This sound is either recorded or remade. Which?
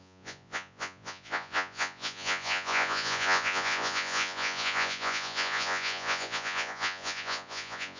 remade